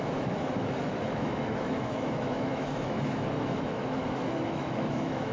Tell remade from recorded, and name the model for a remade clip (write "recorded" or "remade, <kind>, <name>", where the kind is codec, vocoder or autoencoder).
remade, autoencoder, DAC-VAE